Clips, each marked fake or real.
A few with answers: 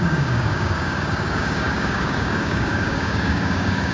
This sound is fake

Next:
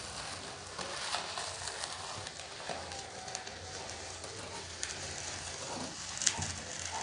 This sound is real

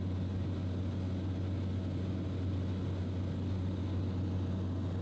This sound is real